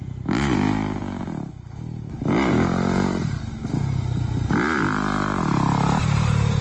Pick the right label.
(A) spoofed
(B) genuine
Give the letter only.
B